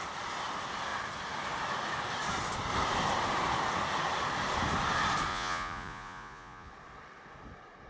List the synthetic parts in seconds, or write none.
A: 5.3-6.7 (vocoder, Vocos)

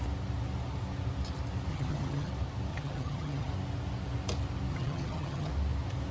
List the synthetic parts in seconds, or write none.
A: 1.7-2.3 (vocoder, HiFi-GAN); 2.7-3.5; 4.7-5.5

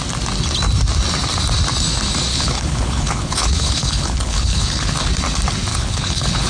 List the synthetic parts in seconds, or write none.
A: 2.3-5.1 (codec, HILCodec); 5.7-6.5

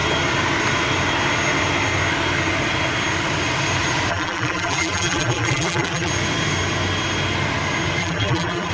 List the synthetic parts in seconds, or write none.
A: 4.1-6.1 (vocoder, BigVGAN v2); 8.0-8.7

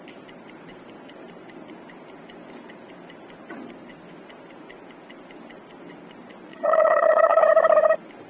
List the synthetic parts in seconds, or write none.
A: 6.5-7.4 (vocoder, HiFi-GAN)